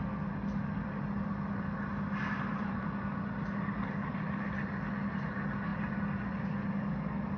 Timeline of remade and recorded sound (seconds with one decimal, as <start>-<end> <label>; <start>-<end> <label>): 0.0-7.4 recorded